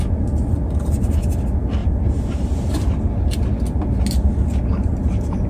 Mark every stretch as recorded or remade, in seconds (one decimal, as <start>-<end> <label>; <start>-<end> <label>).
0.0-1.8 recorded; 1.8-2.7 remade; 2.7-5.5 recorded